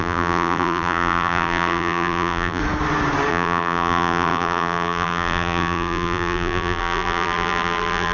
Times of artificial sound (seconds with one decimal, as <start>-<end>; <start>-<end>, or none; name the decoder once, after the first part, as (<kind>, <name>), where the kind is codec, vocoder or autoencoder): 0.0-2.6 (vocoder, BigVGAN v2); 3.3-8.1